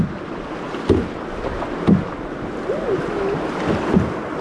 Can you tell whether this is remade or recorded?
recorded